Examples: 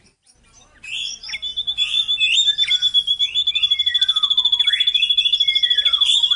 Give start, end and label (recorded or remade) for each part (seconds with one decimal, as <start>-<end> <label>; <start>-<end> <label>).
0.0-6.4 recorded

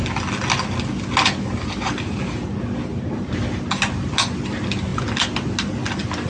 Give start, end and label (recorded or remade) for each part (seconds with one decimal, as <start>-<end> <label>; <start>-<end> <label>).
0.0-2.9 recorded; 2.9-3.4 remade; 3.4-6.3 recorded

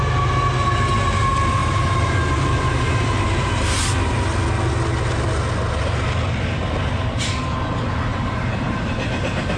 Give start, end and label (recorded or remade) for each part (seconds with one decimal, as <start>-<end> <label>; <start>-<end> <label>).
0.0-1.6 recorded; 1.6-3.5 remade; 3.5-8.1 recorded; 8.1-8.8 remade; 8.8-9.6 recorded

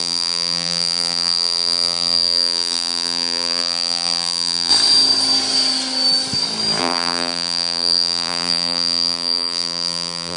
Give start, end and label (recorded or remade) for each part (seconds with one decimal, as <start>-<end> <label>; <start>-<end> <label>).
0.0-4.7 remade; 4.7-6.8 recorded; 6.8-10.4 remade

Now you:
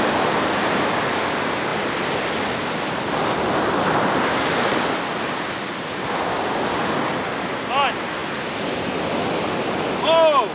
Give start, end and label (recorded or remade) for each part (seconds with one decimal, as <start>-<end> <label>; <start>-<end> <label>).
0.0-10.5 recorded

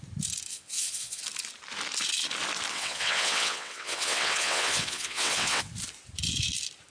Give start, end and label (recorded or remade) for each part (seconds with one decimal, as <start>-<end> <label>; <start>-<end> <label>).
0.0-0.5 recorded; 0.5-1.2 remade; 1.2-2.7 recorded; 2.7-5.7 remade; 5.7-6.9 recorded

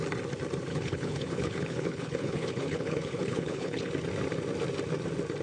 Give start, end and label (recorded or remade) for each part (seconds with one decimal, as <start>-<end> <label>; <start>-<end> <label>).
0.0-0.7 recorded; 0.7-3.9 remade; 3.9-5.4 recorded

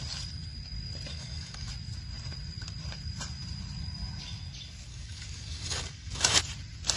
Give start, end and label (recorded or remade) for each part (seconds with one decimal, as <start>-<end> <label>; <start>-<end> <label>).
0.0-1.1 recorded; 1.1-1.7 remade; 1.7-4.9 recorded; 4.9-6.4 remade; 6.4-7.0 recorded